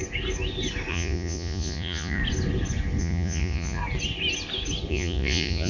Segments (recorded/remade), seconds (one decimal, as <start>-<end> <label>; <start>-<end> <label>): 0.0-0.9 recorded; 0.9-2.2 remade; 2.2-3.0 recorded; 3.0-3.8 remade; 3.8-4.9 recorded; 4.9-5.7 remade